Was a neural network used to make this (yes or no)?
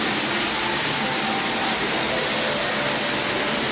no